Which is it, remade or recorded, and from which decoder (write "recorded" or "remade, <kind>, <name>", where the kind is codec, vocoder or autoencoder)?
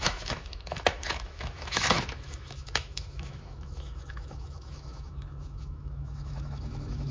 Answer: remade, autoencoder, DAC-VAE